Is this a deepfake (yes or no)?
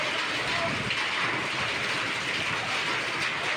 no